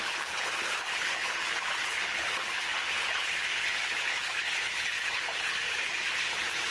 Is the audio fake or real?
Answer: fake